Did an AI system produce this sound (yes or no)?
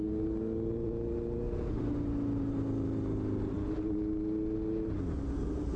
no